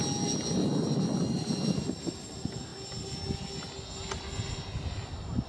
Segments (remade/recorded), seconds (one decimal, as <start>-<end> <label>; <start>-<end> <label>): 0.0-5.5 recorded